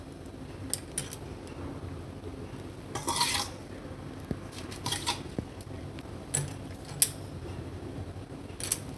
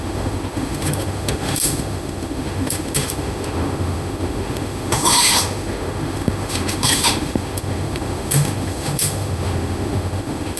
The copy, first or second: second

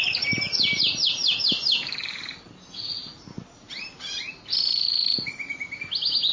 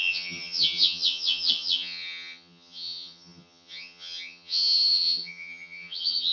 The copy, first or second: second